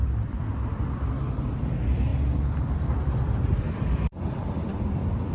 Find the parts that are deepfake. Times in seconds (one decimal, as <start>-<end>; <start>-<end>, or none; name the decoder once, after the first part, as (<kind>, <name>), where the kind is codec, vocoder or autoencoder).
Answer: 0.0-0.5 (vocoder, BigVGAN v2); 1.1-5.3